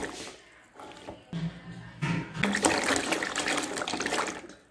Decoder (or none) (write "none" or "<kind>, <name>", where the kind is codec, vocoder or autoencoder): none